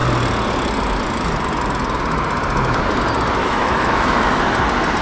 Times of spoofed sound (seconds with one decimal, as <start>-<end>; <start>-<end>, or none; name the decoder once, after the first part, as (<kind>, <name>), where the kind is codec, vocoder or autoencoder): 3.4-4.4 (autoencoder, DAC-VAE)